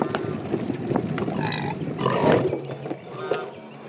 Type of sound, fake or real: real